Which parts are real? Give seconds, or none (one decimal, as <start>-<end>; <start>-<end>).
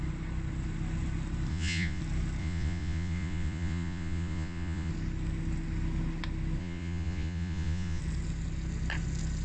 0.0-1.5; 2.0-2.4; 4.9-6.6; 8.0-9.4